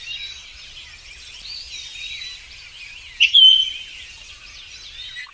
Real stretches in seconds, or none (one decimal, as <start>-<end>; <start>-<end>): 0.0-5.3